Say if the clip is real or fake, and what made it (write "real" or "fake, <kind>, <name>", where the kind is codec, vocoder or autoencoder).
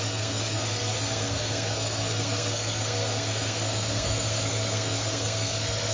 fake, codec, SNAC